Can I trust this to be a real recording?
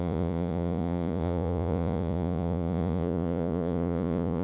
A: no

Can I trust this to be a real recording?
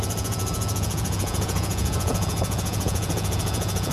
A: no